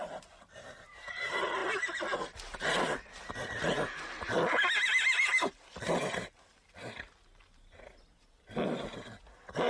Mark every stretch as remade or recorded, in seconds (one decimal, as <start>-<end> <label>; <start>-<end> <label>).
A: 0.0-9.7 recorded